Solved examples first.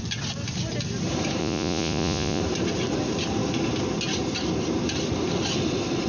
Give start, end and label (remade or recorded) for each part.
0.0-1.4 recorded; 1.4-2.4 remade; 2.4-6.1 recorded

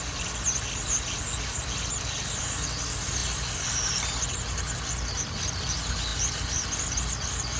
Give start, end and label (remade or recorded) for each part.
0.0-7.6 recorded